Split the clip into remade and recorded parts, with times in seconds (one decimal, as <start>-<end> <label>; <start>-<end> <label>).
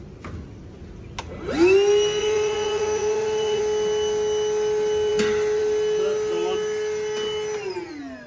0.0-2.2 recorded; 2.2-3.6 remade; 3.6-8.3 recorded